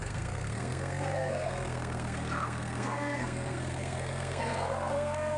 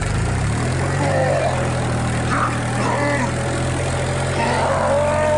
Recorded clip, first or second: second